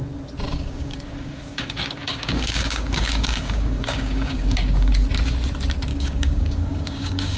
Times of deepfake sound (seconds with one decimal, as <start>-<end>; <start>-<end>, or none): 0.5-4.9; 5.9-7.4

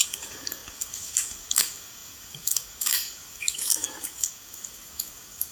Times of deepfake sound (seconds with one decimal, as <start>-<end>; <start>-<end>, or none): 0.0-5.5